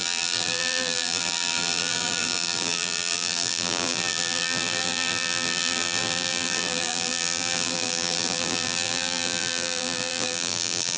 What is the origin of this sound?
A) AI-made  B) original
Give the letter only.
A